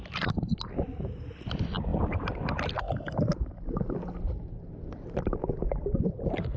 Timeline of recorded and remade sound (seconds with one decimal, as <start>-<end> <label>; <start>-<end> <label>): 0.0-6.6 recorded